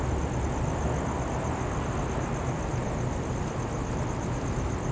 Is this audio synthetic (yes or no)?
no